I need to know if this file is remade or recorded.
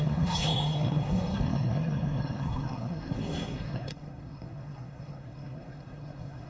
remade